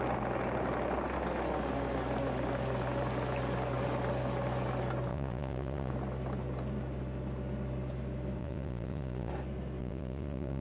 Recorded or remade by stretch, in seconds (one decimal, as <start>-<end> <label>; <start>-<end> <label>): 0.0-5.1 recorded; 5.1-5.9 remade; 5.9-8.4 recorded; 8.4-9.3 remade; 9.3-9.8 recorded; 9.8-10.6 remade